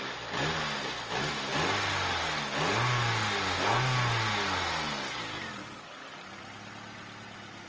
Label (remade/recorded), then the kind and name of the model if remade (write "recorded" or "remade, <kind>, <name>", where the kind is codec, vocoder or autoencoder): recorded